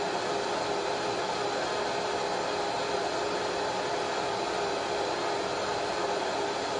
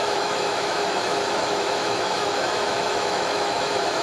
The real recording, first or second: first